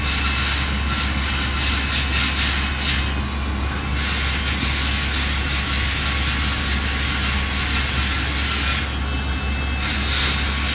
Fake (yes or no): no